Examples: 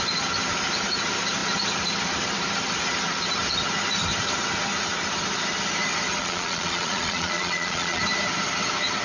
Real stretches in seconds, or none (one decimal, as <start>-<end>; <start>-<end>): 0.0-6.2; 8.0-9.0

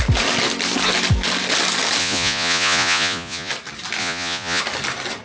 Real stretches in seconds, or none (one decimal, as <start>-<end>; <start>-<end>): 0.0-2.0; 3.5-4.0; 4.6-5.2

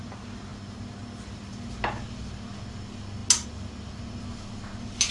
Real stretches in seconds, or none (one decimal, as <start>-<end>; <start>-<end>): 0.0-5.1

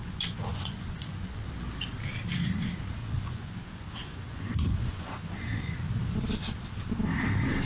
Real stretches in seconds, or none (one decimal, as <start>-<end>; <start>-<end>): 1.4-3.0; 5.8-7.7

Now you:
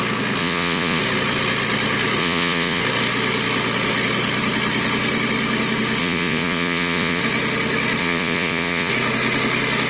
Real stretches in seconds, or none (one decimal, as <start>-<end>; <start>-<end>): 0.0-0.4; 1.0-2.2; 2.8-6.0; 7.2-8.0; 8.9-9.9

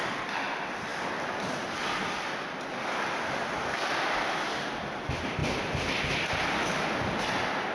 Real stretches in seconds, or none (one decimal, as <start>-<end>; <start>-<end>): 0.0-7.7

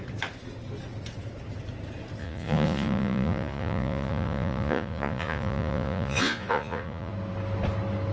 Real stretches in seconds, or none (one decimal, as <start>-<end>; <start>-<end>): 0.0-2.2; 7.1-8.1

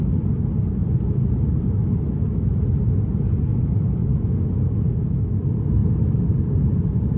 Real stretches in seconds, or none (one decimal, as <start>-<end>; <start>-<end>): 0.0-3.5; 5.3-7.2